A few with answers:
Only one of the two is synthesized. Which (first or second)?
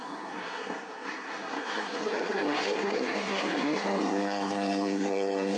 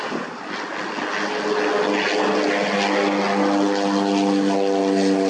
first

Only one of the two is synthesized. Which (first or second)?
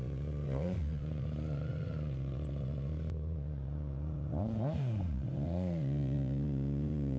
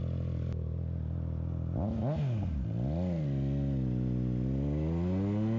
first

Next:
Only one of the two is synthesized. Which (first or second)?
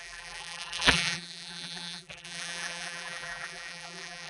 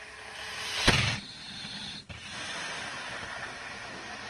first